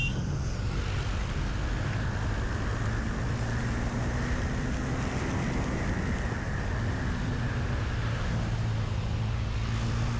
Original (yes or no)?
yes